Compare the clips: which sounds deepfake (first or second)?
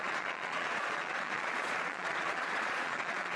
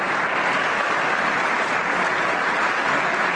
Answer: first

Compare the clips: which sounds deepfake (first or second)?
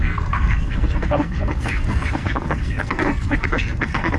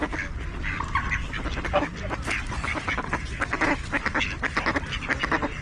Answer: first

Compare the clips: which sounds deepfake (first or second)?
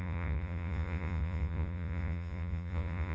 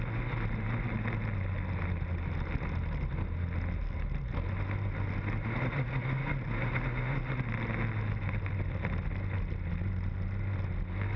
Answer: first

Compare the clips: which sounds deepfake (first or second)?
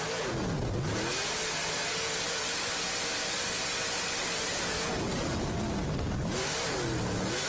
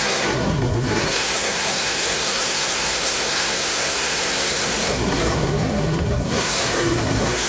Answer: second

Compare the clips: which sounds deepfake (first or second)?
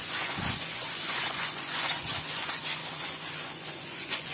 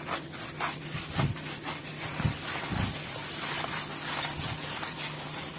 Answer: first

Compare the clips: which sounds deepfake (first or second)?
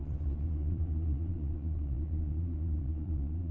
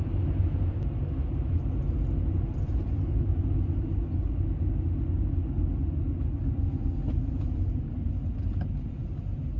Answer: first